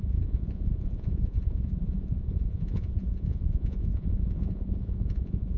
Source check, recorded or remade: remade